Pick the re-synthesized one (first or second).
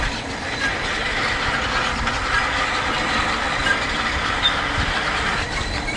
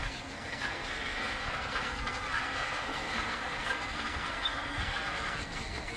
second